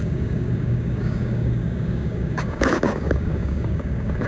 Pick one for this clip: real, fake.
fake